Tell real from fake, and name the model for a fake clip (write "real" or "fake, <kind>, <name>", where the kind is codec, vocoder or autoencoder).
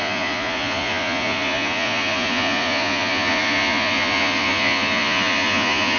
fake, vocoder, Vocos